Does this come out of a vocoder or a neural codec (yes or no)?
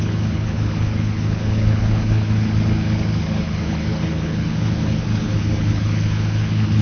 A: yes